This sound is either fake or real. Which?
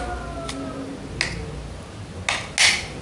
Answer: real